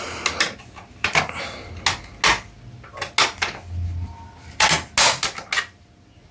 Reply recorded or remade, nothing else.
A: recorded